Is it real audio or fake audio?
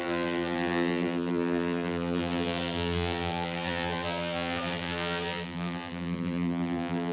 fake